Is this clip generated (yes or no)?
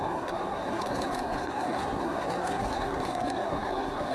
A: yes